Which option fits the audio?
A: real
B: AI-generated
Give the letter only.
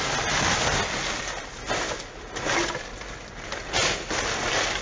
A